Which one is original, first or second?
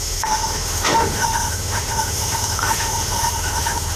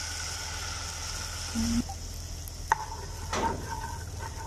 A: second